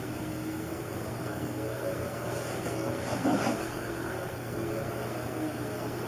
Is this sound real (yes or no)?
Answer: no